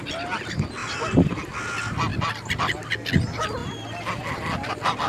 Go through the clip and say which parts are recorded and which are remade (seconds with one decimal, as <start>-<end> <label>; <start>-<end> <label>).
0.0-5.1 recorded